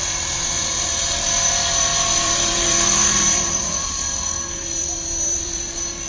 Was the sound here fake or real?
fake